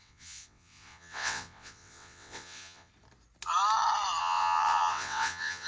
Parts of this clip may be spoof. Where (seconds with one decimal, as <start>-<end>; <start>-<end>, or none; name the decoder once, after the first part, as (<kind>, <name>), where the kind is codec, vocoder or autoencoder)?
0.0-2.9 (vocoder, WaveNeXt); 4.2-5.7